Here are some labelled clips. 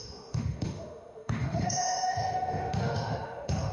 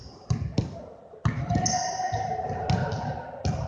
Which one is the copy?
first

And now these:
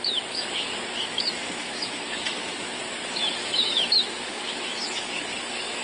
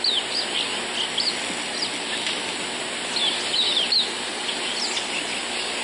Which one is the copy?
first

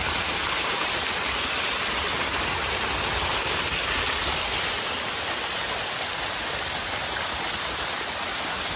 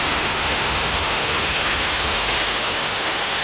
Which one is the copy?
second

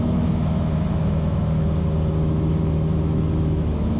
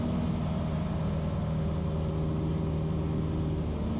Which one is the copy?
first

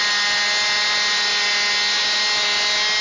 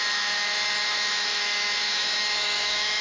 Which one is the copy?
second